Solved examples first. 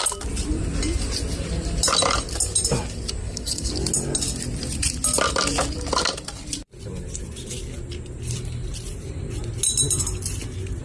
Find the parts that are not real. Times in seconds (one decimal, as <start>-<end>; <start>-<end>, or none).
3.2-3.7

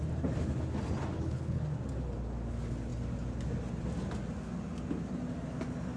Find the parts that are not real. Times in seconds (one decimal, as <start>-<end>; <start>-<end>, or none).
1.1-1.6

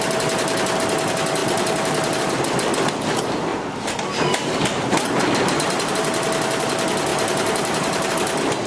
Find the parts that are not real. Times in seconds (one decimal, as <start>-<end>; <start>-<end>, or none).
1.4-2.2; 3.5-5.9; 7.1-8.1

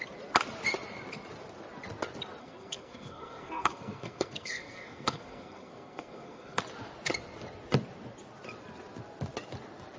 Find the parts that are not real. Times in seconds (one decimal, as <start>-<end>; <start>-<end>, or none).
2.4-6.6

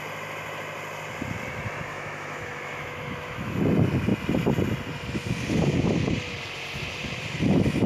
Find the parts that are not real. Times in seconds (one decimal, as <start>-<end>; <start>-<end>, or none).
1.9-3.6